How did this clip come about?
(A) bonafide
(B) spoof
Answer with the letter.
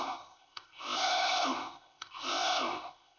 B